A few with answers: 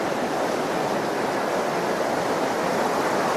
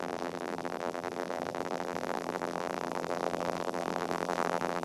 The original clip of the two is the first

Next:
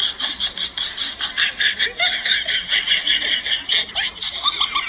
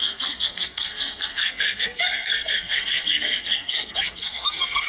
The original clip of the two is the first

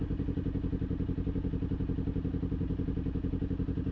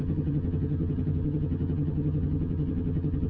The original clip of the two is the first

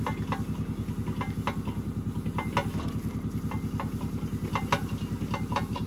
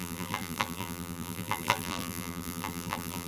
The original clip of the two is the first